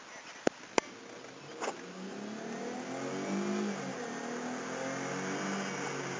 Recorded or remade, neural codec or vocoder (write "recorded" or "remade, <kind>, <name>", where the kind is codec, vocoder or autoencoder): recorded